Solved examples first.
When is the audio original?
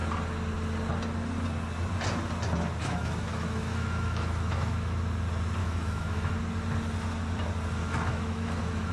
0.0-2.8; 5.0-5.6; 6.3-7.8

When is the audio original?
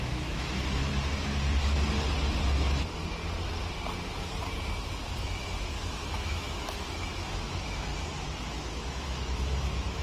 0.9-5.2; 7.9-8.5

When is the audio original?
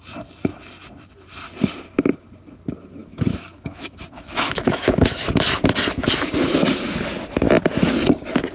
0.0-3.0; 5.6-8.5